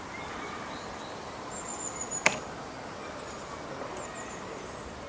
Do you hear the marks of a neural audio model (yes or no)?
no